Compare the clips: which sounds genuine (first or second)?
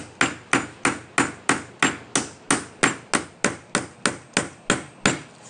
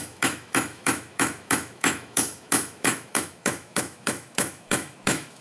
first